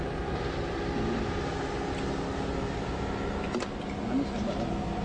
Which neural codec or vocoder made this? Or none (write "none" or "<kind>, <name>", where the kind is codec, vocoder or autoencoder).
none